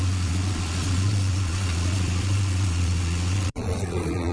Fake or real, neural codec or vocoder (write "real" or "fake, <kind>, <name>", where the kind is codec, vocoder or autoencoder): fake, vocoder, Vocos